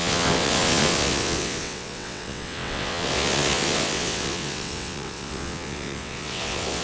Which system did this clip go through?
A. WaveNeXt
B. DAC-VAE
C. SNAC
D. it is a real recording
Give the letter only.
A